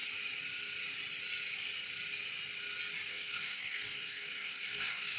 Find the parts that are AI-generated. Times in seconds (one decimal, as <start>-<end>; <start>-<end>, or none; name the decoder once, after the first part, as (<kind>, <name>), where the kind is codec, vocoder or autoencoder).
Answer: 3.1-5.2 (codec, DAC)